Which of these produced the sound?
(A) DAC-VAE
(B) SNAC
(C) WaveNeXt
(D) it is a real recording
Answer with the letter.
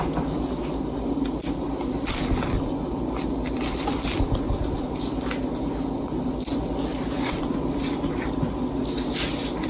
D